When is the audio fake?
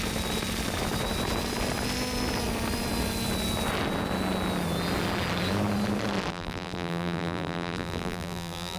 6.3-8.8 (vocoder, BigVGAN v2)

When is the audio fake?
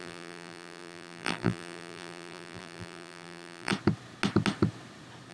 0.0-3.7 (vocoder, BigVGAN v2)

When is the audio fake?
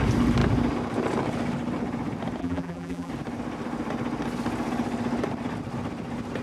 2.4-3.1 (vocoder, BigVGAN v2)